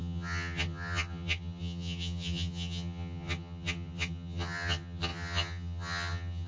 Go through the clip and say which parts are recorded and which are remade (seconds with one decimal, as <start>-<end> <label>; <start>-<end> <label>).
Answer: 0.0-6.5 remade